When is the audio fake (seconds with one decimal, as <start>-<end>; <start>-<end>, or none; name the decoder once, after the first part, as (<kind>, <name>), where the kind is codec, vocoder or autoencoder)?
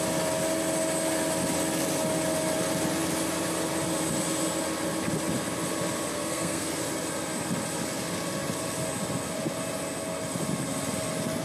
6.1-6.8 (codec, SNAC)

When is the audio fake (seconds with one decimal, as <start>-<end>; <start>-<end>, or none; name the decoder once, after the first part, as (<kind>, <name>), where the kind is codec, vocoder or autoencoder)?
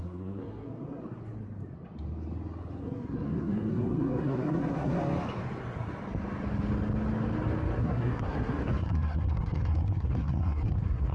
0.0-1.0 (codec, SNAC); 2.8-5.0; 7.8-11.1